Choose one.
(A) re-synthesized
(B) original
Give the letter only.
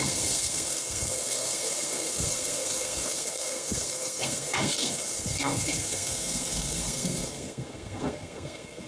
A